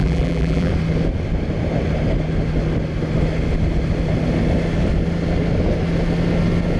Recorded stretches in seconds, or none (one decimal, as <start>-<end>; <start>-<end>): 0.7-6.8